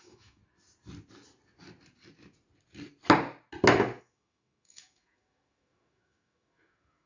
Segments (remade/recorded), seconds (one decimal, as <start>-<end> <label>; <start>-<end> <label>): 0.0-0.4 remade; 0.4-4.0 recorded; 4.0-7.1 remade

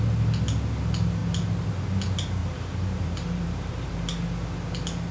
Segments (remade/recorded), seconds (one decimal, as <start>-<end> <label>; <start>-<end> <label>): 0.0-2.4 recorded; 2.4-3.9 remade; 3.9-5.1 recorded

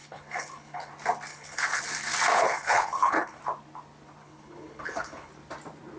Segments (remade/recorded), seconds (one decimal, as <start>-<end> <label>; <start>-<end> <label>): 0.0-0.9 remade; 0.9-1.3 recorded; 1.3-1.8 remade; 1.8-2.3 recorded; 2.3-3.4 remade; 3.4-4.2 recorded; 4.2-5.3 remade; 5.3-6.0 recorded

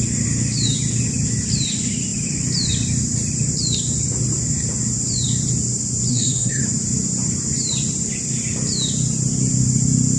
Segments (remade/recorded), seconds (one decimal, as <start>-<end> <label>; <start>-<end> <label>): 0.0-6.1 recorded; 6.1-6.6 remade; 6.6-10.2 recorded

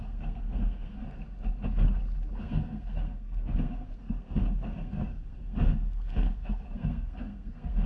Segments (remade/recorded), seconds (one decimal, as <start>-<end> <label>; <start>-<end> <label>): 0.0-1.0 remade; 1.0-2.4 recorded; 2.4-7.9 remade

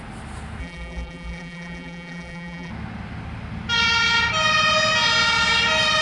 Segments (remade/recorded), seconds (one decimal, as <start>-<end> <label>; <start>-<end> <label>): 0.0-0.6 recorded; 0.6-2.7 remade; 2.7-6.0 recorded

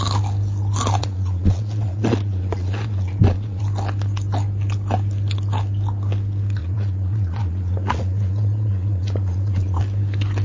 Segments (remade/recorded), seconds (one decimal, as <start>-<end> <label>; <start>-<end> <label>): 0.0-1.0 recorded; 1.0-3.6 remade; 3.6-6.6 recorded; 6.6-9.8 remade; 9.8-10.4 recorded

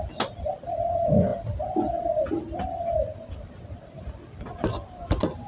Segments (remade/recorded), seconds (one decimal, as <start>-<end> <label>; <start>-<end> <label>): 0.0-5.5 recorded